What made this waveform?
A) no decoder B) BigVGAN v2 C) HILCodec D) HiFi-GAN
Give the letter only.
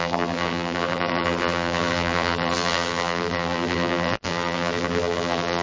B